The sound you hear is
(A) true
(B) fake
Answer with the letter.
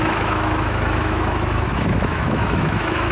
B